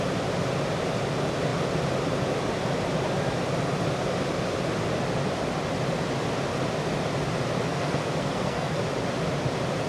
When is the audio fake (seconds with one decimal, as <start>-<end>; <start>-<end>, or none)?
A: 7.7-8.8